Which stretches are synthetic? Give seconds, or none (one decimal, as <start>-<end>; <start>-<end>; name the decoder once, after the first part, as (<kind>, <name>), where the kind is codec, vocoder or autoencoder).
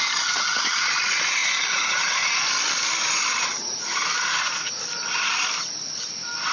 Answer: 1.4-2.1 (vocoder, Vocos); 3.6-4.8